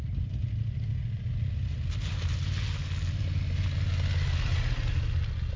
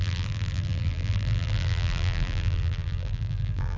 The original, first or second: first